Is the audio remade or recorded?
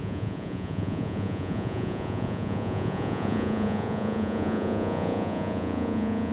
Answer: remade